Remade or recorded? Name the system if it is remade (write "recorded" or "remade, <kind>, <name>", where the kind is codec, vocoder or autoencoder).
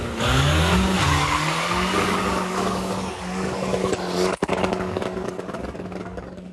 remade, codec, DAC